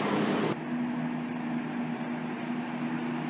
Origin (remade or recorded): recorded